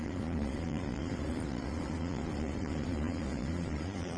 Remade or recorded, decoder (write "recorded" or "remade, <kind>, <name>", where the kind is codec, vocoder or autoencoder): remade, vocoder, Vocos